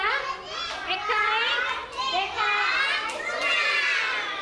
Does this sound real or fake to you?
real